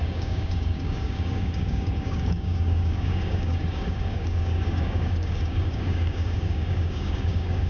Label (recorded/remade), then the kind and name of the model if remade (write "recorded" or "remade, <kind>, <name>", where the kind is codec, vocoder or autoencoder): remade, codec, DAC